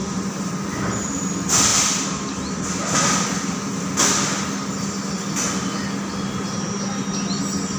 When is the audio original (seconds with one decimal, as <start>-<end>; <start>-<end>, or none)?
0.5-1.7; 2.6-7.8